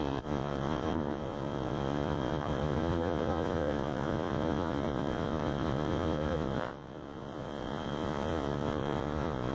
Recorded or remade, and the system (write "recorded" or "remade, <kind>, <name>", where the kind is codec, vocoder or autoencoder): remade, vocoder, Vocos